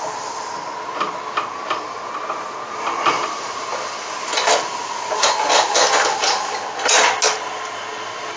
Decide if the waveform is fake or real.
real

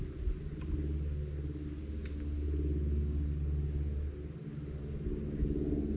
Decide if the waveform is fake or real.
real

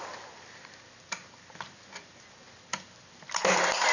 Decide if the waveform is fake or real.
real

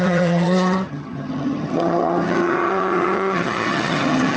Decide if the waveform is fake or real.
fake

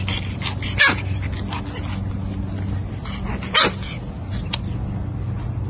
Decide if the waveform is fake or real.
real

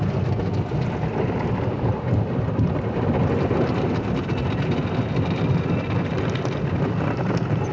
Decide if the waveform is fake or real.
real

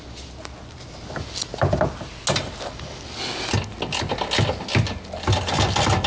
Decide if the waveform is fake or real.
real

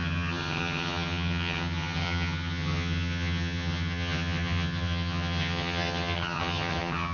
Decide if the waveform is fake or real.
fake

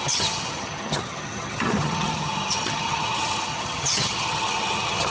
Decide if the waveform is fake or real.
fake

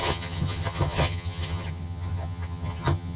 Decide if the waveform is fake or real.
fake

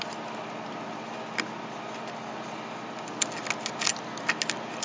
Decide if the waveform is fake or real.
real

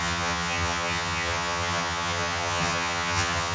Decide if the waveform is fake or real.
fake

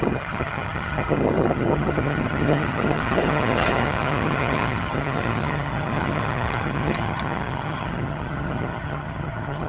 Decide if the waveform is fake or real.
fake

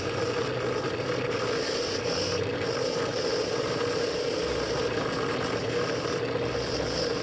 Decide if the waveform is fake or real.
real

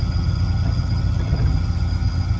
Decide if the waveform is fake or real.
fake